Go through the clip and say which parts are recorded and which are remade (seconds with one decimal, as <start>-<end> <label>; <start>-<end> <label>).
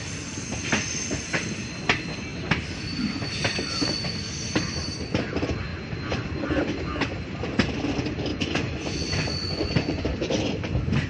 0.0-8.3 recorded; 8.3-10.0 remade; 10.0-11.1 recorded